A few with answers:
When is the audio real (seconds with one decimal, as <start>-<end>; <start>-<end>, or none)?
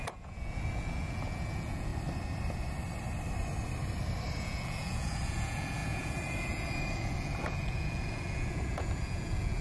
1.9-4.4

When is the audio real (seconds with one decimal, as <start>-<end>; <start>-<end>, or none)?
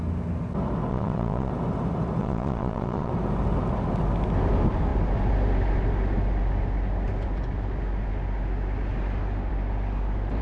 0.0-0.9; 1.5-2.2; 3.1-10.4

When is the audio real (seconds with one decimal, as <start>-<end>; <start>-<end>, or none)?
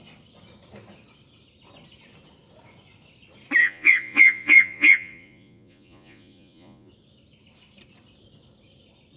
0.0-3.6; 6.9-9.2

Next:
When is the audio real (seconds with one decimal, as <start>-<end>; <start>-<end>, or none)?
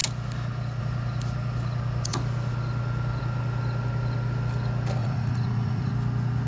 0.0-5.0; 5.9-6.5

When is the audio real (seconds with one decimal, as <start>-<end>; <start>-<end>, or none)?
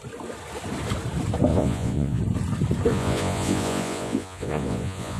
0.0-1.5; 2.2-2.9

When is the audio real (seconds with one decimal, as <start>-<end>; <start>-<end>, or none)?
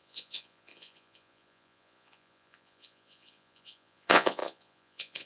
none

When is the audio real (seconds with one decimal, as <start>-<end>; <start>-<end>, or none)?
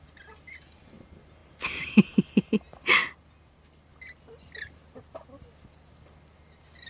0.0-6.9